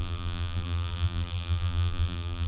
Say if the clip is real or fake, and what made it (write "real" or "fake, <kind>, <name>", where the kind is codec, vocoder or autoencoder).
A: fake, vocoder, BigVGAN v2